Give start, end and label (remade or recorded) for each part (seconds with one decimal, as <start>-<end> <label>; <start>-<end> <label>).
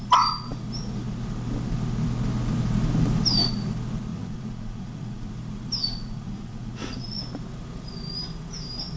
0.0-4.1 recorded; 4.1-5.3 remade; 5.3-5.8 recorded; 5.8-7.2 remade; 7.2-9.0 recorded